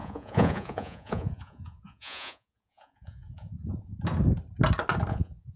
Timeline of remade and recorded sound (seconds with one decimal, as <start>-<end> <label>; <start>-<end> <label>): 0.0-3.9 remade; 3.9-5.1 recorded; 5.1-5.6 remade